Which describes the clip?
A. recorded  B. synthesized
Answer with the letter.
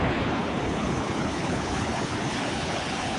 B